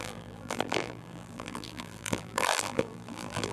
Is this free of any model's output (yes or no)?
no